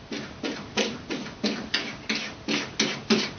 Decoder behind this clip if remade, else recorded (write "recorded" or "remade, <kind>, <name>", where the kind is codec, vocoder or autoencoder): recorded